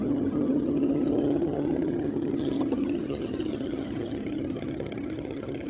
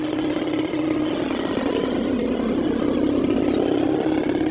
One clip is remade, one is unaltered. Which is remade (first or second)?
first